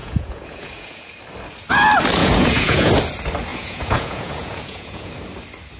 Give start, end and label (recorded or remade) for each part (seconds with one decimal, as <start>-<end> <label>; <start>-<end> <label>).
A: 0.0-1.1 remade; 1.1-2.2 recorded; 2.2-2.9 remade; 2.9-3.5 recorded; 3.5-5.1 remade; 5.1-5.8 recorded